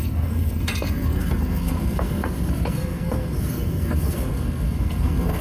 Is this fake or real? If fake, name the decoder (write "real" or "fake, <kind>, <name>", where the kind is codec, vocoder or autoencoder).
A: fake, codec, SNAC